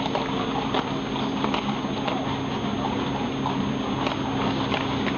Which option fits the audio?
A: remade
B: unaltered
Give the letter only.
B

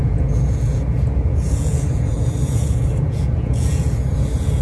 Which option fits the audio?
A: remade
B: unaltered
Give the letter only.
A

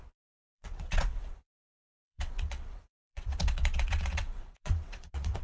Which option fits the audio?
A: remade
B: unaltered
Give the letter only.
A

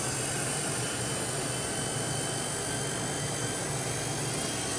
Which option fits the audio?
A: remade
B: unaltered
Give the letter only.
B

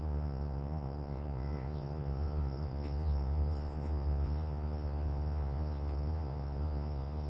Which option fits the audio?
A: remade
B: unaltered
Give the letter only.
A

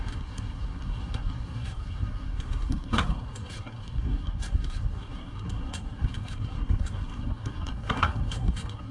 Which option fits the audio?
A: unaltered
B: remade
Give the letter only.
B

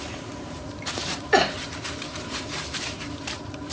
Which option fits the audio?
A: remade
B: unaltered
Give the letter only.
A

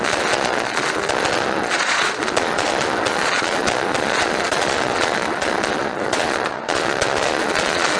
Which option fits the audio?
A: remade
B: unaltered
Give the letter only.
A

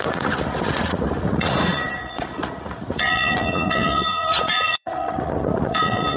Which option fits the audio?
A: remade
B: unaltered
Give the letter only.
A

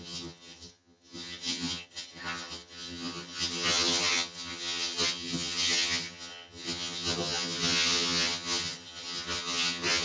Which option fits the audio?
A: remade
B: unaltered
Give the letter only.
A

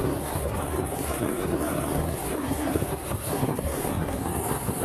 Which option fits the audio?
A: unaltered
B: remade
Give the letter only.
B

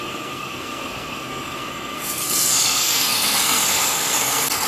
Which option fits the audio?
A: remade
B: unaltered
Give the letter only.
A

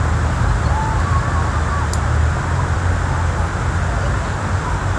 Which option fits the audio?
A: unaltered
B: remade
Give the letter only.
A